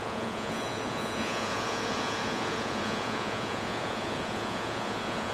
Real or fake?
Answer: fake